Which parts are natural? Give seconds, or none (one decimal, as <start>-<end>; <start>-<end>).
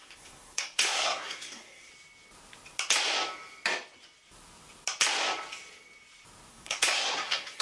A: 1.9-6.5